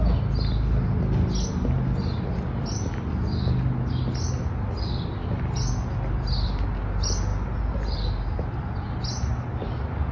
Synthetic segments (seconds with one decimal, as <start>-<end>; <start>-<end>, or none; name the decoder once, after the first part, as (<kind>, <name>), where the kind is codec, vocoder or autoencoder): none